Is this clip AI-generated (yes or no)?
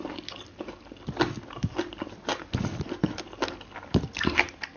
no